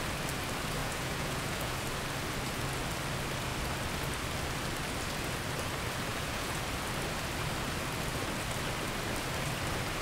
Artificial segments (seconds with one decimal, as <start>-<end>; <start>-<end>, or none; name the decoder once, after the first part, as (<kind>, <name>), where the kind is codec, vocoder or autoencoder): 0.8-1.8 (vocoder, Vocos); 6.1-6.6